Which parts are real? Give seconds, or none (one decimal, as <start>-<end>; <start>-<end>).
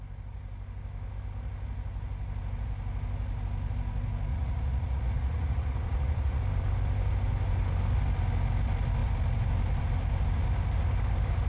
0.0-4.3; 6.4-11.5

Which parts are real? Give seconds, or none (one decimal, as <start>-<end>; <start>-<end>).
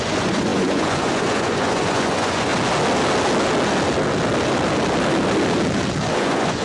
2.5-6.1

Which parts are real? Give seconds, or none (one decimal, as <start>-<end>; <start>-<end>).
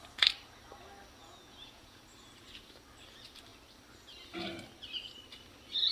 0.0-1.2; 2.0-5.9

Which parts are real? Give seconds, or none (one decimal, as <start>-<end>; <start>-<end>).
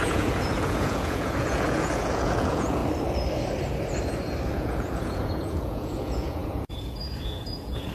2.8-4.5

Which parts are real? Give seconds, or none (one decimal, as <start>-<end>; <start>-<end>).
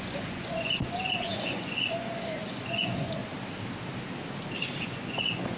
3.2-4.8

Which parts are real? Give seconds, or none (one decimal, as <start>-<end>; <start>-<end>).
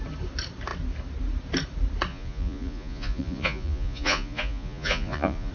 0.0-2.1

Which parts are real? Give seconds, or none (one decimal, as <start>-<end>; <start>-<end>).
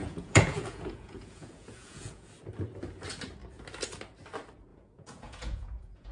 2.3-4.7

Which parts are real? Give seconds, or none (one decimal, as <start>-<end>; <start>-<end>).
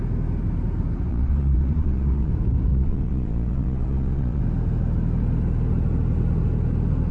0.0-1.1; 2.3-2.7; 4.4-7.1